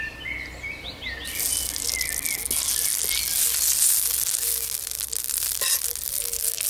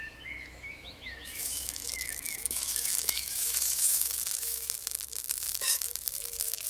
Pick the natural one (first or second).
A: first